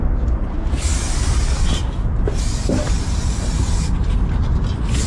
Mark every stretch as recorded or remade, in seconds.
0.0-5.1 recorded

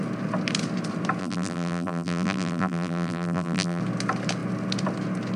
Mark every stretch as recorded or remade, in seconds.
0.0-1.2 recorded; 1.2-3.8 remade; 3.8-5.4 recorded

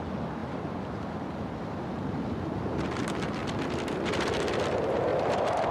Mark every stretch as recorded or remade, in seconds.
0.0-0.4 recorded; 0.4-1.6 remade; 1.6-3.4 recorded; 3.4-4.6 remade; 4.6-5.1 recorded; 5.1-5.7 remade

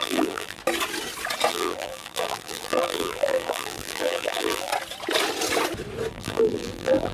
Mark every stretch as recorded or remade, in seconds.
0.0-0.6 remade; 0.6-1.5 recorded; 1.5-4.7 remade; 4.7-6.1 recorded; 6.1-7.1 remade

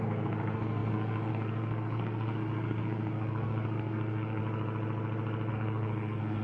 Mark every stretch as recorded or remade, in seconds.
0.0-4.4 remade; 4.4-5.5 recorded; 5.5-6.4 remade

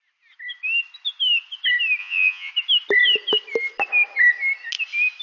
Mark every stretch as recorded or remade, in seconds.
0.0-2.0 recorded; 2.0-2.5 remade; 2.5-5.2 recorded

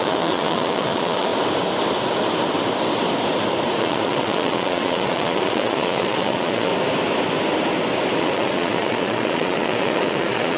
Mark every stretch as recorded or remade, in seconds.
0.0-1.3 remade; 1.3-3.8 recorded; 3.8-6.7 remade; 6.7-8.2 recorded; 8.2-10.6 remade